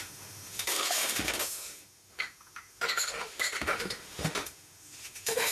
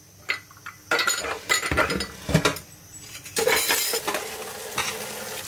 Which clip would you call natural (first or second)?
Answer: second